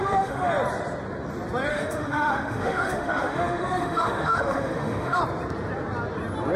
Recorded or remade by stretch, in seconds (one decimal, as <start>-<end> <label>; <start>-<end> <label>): 0.0-0.5 remade; 0.5-1.7 recorded; 1.7-5.2 remade; 5.2-6.6 recorded